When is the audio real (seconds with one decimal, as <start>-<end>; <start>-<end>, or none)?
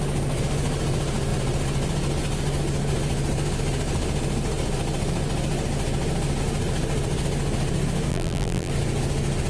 0.0-8.1; 8.7-9.5